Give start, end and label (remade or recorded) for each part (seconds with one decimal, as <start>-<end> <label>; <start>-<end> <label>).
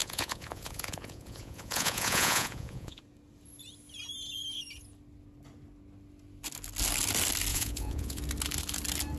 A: 0.0-3.0 remade; 3.0-7.5 recorded; 7.5-8.2 remade; 8.2-9.2 recorded